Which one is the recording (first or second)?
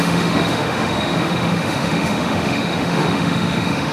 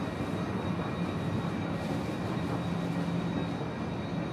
second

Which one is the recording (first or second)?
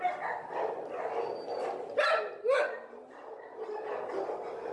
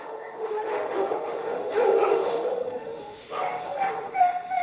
first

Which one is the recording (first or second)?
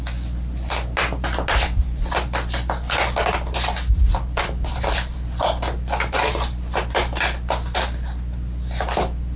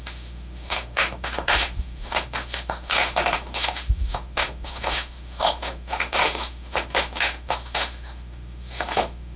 first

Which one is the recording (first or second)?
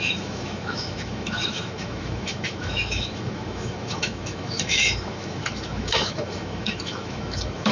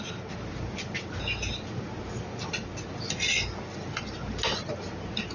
second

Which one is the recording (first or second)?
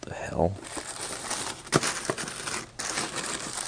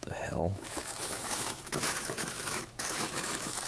first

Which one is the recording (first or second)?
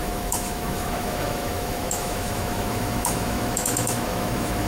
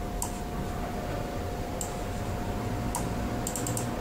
second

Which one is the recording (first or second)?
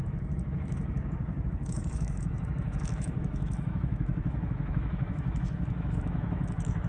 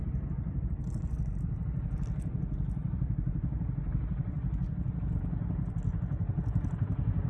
second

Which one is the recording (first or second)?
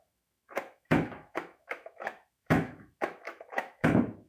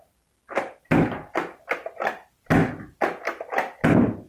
second